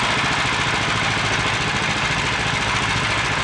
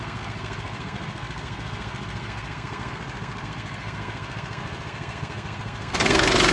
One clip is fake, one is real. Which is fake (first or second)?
second